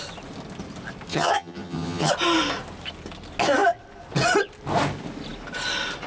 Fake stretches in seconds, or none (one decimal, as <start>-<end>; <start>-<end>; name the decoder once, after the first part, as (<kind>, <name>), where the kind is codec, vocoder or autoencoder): 1.1-2.1 (vocoder, HiFi-GAN)

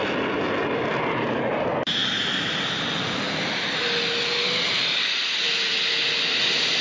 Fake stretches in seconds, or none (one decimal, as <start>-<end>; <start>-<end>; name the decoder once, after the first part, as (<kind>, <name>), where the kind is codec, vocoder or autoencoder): none

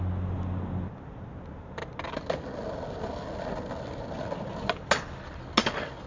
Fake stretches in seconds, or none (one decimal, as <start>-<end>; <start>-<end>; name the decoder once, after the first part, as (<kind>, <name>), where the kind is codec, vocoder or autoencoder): none

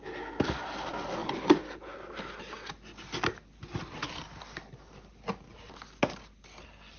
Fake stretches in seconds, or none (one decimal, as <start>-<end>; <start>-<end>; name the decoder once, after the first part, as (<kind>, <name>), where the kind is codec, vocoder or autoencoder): none

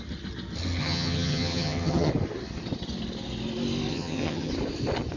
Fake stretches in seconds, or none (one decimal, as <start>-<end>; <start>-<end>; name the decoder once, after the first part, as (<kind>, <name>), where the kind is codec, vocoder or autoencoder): 0.8-2.1 (vocoder, HiFi-GAN); 3.9-4.5

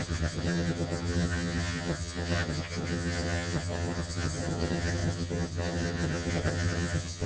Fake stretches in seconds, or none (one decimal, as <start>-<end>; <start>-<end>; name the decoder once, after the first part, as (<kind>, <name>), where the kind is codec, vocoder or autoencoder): 0.0-7.3 (vocoder, HiFi-GAN)